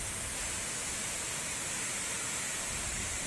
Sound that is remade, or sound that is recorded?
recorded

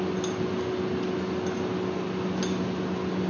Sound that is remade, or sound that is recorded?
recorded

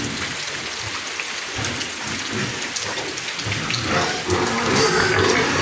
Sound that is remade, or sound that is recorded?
recorded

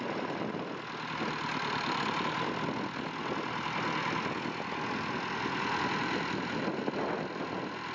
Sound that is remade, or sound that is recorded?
recorded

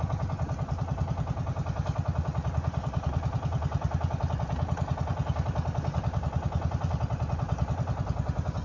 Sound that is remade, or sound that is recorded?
recorded